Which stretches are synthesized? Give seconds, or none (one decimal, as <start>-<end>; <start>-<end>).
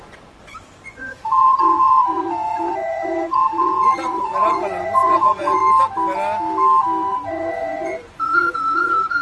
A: 0.0-5.6; 7.1-9.2